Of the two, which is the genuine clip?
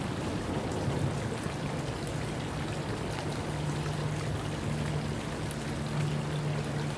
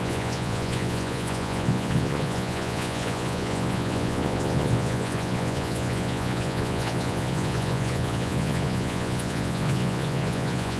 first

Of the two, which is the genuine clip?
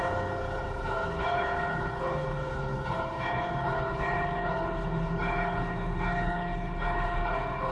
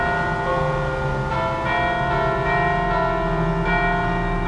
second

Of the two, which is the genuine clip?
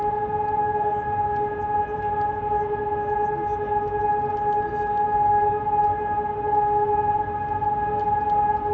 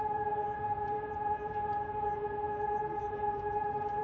first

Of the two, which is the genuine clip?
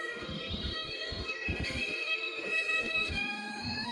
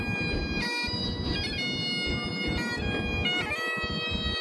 second